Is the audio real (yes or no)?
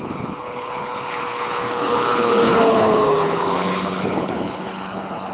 no